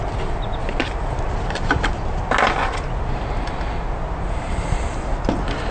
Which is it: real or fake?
real